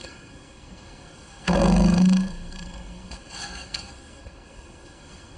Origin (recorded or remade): remade